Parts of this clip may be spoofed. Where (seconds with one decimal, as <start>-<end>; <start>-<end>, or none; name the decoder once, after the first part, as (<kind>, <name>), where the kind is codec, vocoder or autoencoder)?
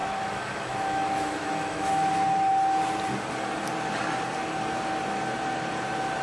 0.0-2.1 (autoencoder, DAC-VAE)